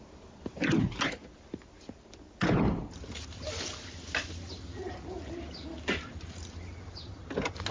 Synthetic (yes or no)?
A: no